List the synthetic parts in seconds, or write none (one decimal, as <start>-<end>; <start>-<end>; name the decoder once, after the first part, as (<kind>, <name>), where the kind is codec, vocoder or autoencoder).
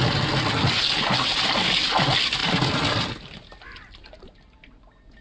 none